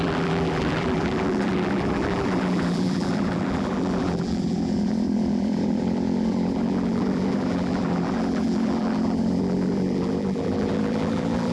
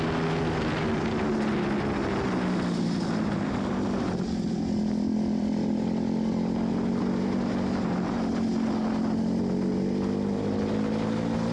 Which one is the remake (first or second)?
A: first